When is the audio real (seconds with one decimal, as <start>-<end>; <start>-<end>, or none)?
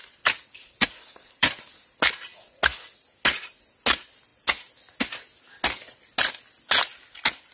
2.0-7.5